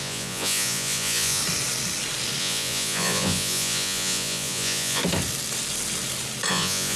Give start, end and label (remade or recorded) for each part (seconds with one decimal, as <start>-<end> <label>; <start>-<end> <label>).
0.0-1.4 remade; 1.4-2.4 recorded; 2.4-5.0 remade; 5.0-6.5 recorded; 6.5-7.0 remade